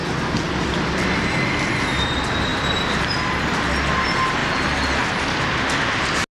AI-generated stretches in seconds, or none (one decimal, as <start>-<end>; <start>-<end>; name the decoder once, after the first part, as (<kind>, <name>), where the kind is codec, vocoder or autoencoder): 2.5-3.4 (vocoder, BigVGAN v2)